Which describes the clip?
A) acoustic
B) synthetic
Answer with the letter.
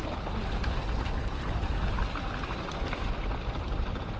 A